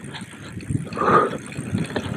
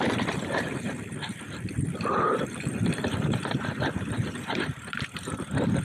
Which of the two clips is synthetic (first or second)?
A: second